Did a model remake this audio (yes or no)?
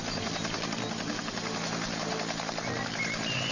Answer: no